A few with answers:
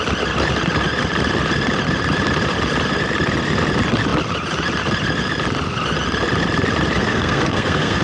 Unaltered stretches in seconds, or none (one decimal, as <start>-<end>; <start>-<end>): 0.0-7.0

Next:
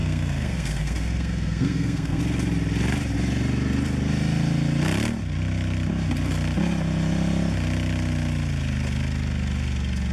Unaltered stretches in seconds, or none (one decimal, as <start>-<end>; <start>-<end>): 2.2-10.1

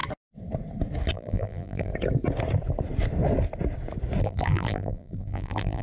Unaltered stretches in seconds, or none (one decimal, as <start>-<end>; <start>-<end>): 0.0-1.1; 1.9-4.2